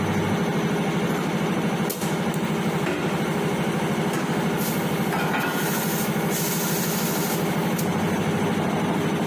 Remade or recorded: recorded